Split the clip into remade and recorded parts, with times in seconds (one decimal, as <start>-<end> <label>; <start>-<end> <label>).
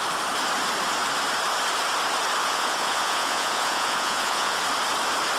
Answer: 0.0-2.4 recorded; 2.4-4.6 remade; 4.6-5.4 recorded